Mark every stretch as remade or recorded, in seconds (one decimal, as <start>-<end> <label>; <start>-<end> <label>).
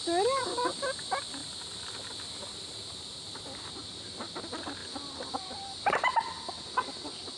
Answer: 0.0-7.4 recorded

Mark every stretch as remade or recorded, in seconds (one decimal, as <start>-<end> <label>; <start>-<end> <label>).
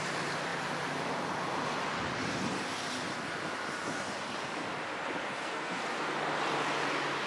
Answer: 0.0-5.2 recorded; 5.2-5.8 remade; 5.8-7.3 recorded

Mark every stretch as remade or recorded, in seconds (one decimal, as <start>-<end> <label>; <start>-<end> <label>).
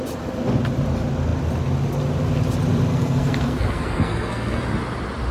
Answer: 0.0-2.9 recorded; 2.9-4.6 remade; 4.6-5.3 recorded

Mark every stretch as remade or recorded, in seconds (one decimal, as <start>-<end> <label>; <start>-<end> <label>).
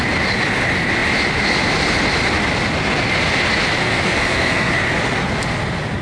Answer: 0.0-3.8 recorded; 3.8-4.7 remade; 4.7-6.0 recorded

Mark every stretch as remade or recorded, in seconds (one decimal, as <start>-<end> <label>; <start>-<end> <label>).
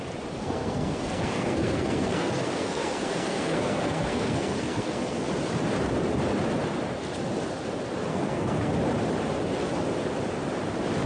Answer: 0.0-0.4 recorded; 0.4-5.2 remade; 5.2-8.1 recorded; 8.1-8.7 remade; 8.7-11.1 recorded